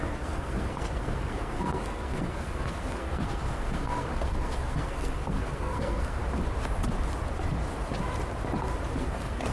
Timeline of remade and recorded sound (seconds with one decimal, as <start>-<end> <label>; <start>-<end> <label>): 0.0-6.2 remade; 6.2-9.0 recorded; 9.0-9.5 remade